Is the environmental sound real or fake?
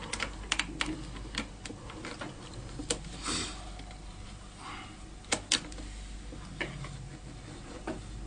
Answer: real